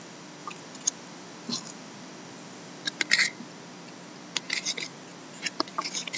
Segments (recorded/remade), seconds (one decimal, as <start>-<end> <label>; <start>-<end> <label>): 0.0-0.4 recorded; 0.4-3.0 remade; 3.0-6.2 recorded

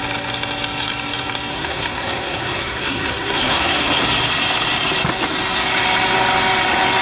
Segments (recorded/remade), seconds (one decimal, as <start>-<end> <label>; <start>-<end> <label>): 0.0-1.5 recorded; 1.5-3.8 remade; 3.8-7.0 recorded

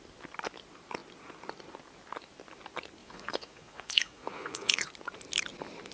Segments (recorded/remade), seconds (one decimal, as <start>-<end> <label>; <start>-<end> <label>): 0.0-3.0 recorded; 3.0-4.9 remade; 4.9-5.9 recorded

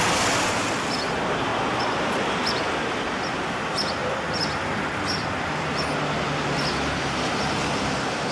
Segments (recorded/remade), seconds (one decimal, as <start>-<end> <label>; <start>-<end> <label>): 0.0-8.3 recorded

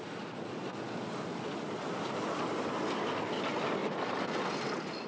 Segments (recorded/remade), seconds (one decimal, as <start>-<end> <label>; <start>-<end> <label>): 0.0-5.1 recorded

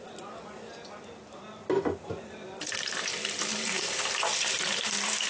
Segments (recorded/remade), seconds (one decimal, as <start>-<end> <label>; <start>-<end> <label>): 0.0-2.0 recorded; 2.0-5.3 remade

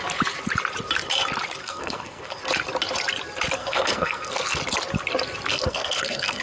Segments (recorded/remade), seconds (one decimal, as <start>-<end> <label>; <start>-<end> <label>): 0.0-1.6 recorded; 1.6-2.4 remade; 2.4-3.6 recorded; 3.6-4.6 remade; 4.6-5.5 recorded; 5.5-6.4 remade

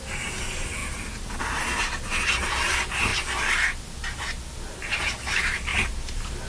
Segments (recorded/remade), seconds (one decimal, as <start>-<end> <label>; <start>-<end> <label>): 0.0-3.1 remade; 3.1-4.7 recorded; 4.7-6.5 remade